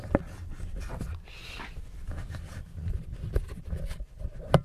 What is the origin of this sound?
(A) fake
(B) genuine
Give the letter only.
B